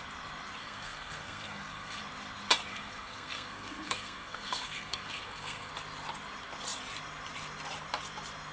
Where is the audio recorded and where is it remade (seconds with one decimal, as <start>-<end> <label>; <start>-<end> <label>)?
0.0-0.6 recorded; 0.6-2.0 remade; 2.0-2.7 recorded; 2.7-5.7 remade; 5.7-8.5 recorded